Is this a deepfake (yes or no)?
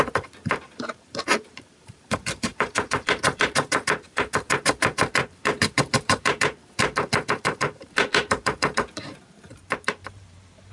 yes